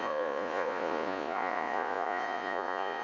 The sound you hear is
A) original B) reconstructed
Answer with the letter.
B